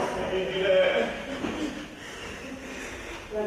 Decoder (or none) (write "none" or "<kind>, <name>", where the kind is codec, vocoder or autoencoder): none